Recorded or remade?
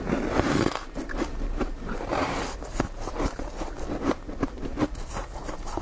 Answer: remade